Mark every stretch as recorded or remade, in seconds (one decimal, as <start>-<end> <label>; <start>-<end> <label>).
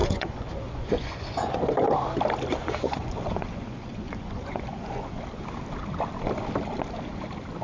0.0-1.6 remade; 1.6-2.5 recorded; 2.5-5.2 remade; 5.2-7.6 recorded